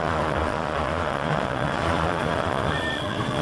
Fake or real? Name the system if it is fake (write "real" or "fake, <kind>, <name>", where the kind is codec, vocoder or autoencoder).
fake, vocoder, Vocos